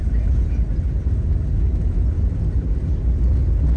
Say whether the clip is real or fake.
real